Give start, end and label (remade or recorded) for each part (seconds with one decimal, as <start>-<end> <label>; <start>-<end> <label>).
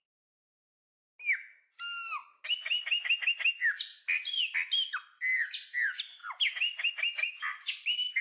0.0-8.2 recorded